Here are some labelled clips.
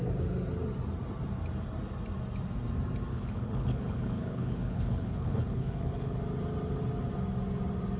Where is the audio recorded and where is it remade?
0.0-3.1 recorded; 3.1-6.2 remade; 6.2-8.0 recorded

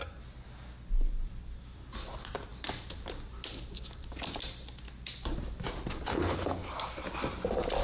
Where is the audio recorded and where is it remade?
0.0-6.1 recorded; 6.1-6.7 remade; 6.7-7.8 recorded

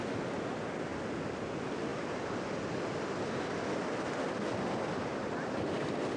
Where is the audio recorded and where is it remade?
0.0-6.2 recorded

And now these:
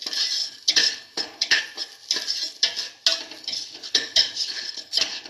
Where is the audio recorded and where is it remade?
0.0-0.4 recorded; 0.4-1.6 remade; 1.6-3.4 recorded; 3.4-5.3 remade

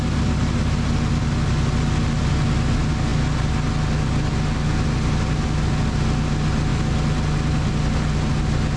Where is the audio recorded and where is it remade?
0.0-8.8 recorded

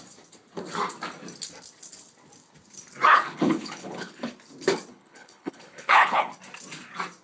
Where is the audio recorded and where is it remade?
0.0-3.1 recorded; 3.1-4.3 remade; 4.3-4.9 recorded; 4.9-6.3 remade; 6.3-7.2 recorded